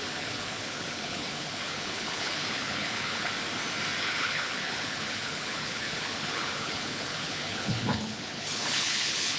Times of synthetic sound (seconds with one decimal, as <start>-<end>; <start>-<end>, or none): 0.0-3.3; 4.0-9.4